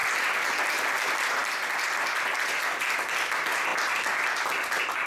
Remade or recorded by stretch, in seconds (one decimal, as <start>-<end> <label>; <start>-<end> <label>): 0.0-5.1 recorded